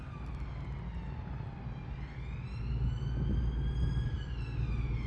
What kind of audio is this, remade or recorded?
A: recorded